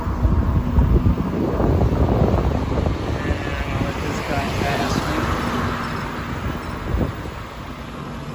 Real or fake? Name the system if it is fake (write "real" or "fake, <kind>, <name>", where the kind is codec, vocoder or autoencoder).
real